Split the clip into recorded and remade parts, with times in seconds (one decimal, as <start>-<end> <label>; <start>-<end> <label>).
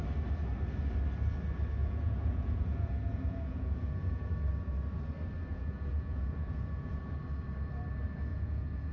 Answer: 0.0-1.8 recorded; 1.8-4.3 remade; 4.3-5.5 recorded; 5.5-7.0 remade; 7.0-8.3 recorded; 8.3-8.9 remade